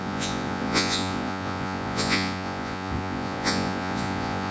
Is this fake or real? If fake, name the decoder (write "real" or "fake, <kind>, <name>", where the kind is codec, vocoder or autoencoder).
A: fake, vocoder, Vocos